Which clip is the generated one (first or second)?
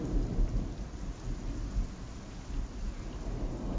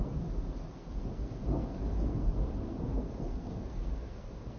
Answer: second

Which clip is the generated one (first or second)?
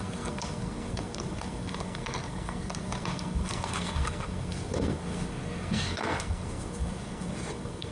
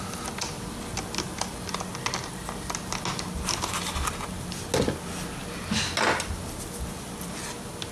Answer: first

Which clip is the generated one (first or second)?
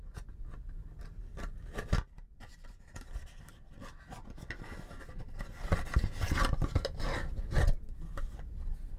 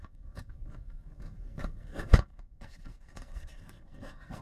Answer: second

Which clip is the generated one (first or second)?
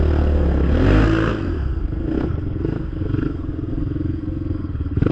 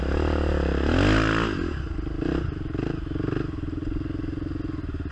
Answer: first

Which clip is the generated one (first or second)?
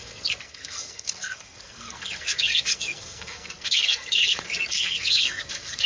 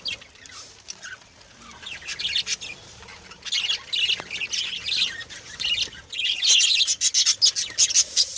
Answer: first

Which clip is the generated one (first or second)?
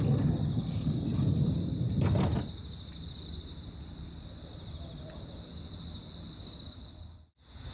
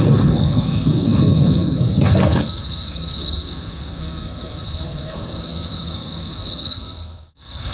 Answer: second